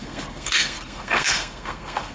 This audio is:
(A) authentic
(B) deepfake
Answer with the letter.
B